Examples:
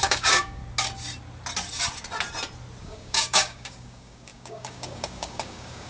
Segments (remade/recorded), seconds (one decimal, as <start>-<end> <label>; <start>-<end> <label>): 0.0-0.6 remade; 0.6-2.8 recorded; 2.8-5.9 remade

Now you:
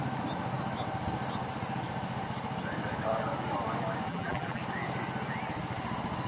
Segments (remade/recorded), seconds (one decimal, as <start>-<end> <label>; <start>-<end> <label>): 0.0-4.1 recorded; 4.1-4.6 remade; 4.6-6.3 recorded

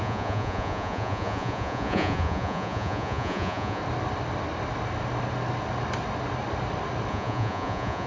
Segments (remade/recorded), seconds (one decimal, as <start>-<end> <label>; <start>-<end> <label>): 0.0-3.8 remade; 3.8-7.1 recorded; 7.1-8.1 remade

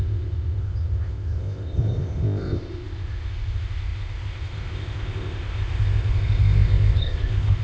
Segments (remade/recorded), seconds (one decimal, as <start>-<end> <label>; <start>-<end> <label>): 0.0-7.6 remade

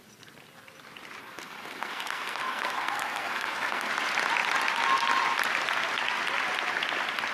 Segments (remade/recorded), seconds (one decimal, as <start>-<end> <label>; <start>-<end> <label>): 0.0-1.2 recorded; 1.2-3.9 remade; 3.9-7.3 recorded

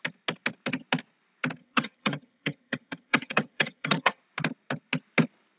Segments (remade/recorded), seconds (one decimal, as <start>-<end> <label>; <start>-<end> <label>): 0.0-1.6 recorded; 1.6-4.2 remade; 4.2-5.6 recorded

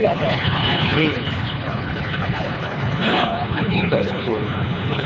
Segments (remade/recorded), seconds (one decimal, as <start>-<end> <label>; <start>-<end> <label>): 0.0-5.1 remade

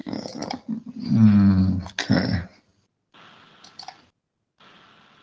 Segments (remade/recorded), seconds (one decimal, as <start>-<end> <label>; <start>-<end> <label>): 0.0-5.2 recorded